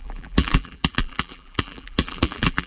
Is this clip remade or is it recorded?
remade